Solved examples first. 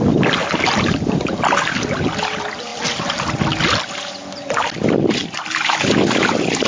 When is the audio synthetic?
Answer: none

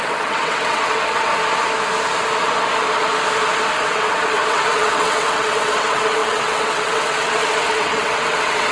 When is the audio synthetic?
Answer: 0.0-1.3 (vocoder, WaveNeXt); 3.9-8.7